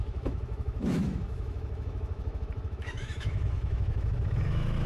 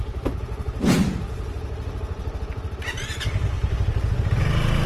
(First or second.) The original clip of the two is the second